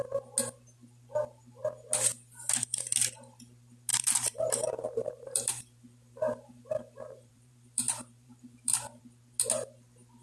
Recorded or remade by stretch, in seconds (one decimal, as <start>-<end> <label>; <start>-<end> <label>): 0.0-3.9 recorded; 3.9-9.0 remade; 9.0-10.2 recorded